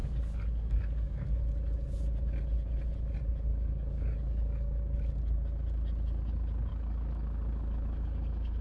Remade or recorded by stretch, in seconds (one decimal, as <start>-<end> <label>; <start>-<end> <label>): 0.0-1.4 remade; 1.4-3.5 recorded; 3.5-5.1 remade; 5.1-6.7 recorded; 6.7-8.6 remade

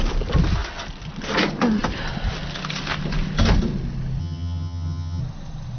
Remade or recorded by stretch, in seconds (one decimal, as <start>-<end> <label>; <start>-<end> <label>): 0.0-4.2 recorded; 4.2-5.2 remade; 5.2-5.8 recorded

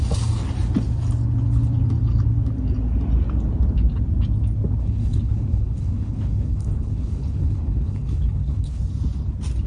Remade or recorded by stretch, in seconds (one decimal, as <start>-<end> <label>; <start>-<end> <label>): 0.0-4.8 recorded; 4.8-8.8 remade; 8.8-9.7 recorded

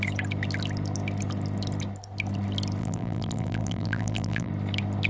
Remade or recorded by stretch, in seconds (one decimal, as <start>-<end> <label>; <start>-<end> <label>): 0.0-2.8 recorded; 2.8-4.5 remade; 4.5-5.1 recorded

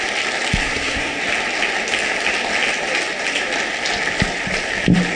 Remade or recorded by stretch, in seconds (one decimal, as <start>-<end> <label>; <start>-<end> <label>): 0.0-0.6 recorded; 0.6-1.2 remade; 1.2-5.1 recorded